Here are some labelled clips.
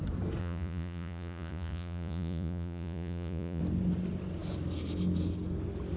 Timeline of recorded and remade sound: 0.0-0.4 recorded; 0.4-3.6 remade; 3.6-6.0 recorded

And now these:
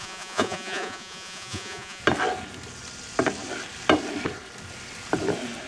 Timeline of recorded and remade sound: 0.0-2.0 remade; 2.0-5.7 recorded